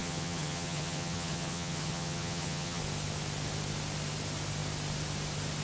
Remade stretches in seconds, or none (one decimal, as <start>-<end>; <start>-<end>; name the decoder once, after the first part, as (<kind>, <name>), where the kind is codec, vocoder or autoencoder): 0.0-2.8 (vocoder, HiFi-GAN)